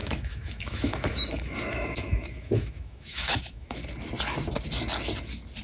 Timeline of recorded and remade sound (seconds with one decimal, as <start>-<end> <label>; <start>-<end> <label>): 0.0-3.8 remade; 3.8-5.6 recorded